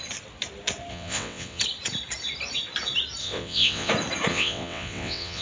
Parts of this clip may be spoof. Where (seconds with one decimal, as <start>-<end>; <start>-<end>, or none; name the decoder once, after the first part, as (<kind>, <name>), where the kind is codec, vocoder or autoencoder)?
0.9-1.6 (vocoder, WaveNeXt); 3.2-3.9; 4.3-5.4